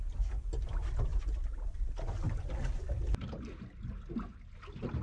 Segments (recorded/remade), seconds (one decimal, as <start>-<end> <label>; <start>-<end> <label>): 0.0-5.0 recorded